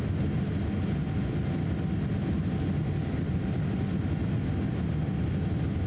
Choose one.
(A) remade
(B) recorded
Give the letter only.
B